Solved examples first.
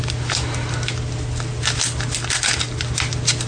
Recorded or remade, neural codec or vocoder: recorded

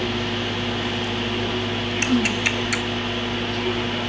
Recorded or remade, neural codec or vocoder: recorded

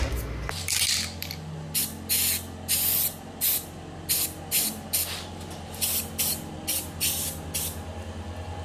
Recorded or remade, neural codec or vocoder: recorded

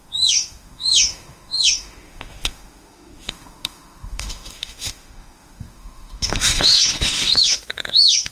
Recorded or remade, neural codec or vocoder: remade, autoencoder, DAC-VAE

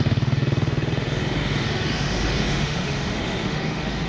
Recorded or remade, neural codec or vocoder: remade, autoencoder, DAC-VAE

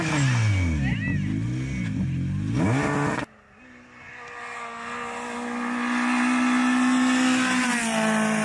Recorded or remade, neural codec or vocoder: recorded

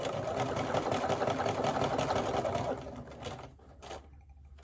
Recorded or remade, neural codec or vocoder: recorded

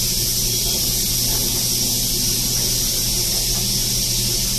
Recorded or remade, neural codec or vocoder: recorded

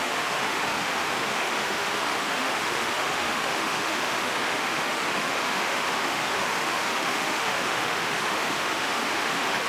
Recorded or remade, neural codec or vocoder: remade, autoencoder, DAC-VAE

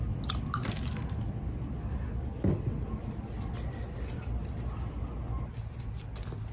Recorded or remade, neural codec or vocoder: recorded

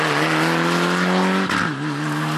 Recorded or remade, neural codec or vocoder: recorded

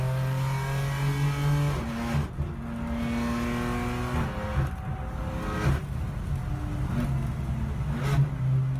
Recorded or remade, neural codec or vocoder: recorded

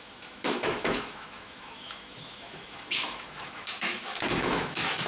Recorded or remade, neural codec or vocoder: remade, autoencoder, DAC-VAE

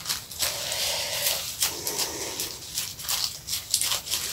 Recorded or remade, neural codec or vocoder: recorded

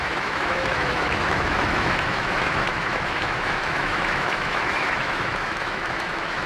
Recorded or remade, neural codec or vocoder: remade, autoencoder, DAC-VAE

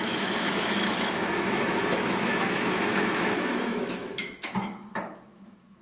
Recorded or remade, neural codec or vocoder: remade, autoencoder, DAC-VAE